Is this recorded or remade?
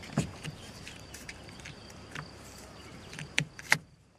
remade